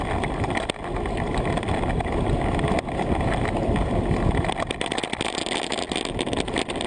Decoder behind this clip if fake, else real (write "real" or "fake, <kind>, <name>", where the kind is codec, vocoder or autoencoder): real